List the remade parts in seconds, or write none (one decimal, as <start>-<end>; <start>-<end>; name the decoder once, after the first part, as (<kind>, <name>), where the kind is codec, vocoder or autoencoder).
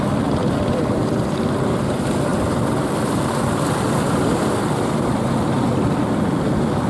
none